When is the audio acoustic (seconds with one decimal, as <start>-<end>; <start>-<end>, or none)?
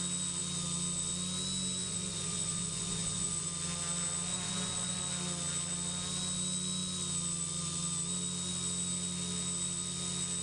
0.0-1.8; 3.5-4.3; 5.0-10.4